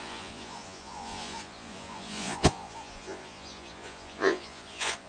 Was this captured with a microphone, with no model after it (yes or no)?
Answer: no